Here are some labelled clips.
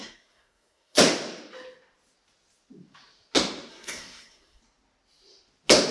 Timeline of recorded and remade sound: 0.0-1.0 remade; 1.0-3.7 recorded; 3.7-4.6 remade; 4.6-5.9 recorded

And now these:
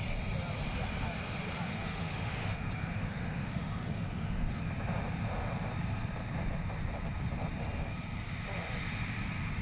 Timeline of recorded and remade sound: 0.0-1.7 recorded; 1.7-4.6 remade; 4.6-9.6 recorded

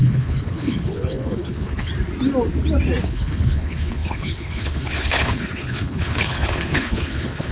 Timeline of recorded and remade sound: 0.0-1.9 remade; 1.9-3.0 recorded; 3.0-7.5 remade